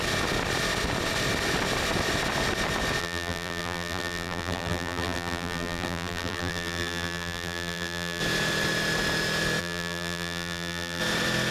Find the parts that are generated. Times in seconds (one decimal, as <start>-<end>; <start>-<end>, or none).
3.0-8.2; 9.6-11.0